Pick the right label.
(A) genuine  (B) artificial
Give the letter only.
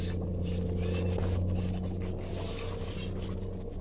A